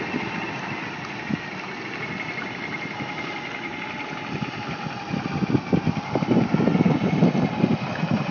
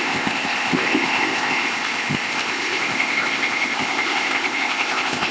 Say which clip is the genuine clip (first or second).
first